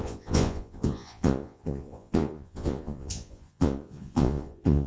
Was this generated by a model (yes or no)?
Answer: yes